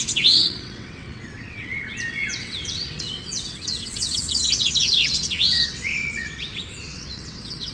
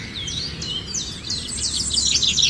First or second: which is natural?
second